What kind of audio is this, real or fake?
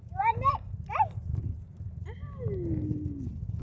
real